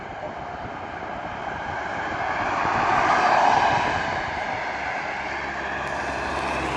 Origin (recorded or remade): recorded